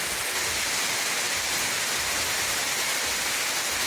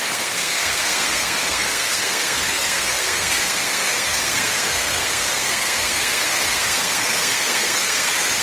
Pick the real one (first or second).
first